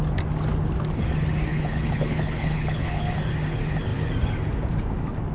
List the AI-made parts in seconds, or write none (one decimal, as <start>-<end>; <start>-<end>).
1.5-3.1